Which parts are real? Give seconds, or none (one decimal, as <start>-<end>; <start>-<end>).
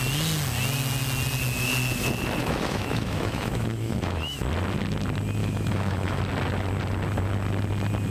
0.0-2.4; 4.4-5.4; 6.2-8.1